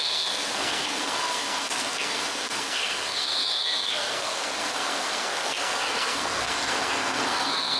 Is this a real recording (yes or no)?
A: no